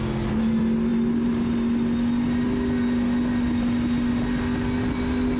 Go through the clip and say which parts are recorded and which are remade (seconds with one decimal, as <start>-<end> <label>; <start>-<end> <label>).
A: 0.0-5.4 recorded

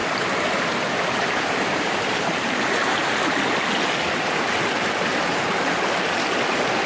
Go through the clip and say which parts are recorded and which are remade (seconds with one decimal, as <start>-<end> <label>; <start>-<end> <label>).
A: 0.0-3.1 remade; 3.1-5.1 recorded; 5.1-6.2 remade; 6.2-6.9 recorded